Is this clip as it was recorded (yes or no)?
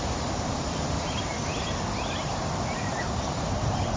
no